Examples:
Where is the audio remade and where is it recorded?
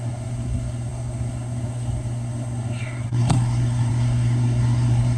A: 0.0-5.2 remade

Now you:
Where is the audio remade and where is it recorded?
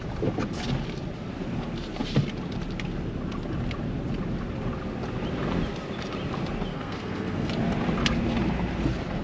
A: 0.0-6.7 recorded; 6.7-7.5 remade; 7.5-9.2 recorded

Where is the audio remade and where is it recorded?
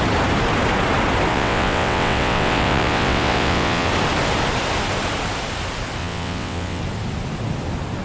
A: 0.0-1.3 recorded; 1.3-3.9 remade; 3.9-6.0 recorded; 6.0-6.8 remade; 6.8-8.0 recorded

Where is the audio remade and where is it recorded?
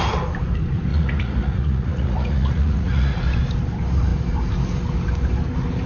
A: 0.0-0.9 recorded; 0.9-3.2 remade; 3.2-5.9 recorded